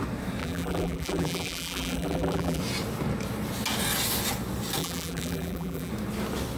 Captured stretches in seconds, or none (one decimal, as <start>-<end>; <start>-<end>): 0.0-0.4; 2.6-4.8; 5.9-6.6